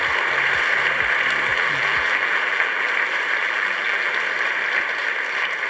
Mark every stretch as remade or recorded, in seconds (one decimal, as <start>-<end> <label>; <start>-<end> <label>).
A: 0.0-1.5 recorded; 1.5-2.9 remade; 2.9-3.4 recorded; 3.4-4.1 remade; 4.1-5.7 recorded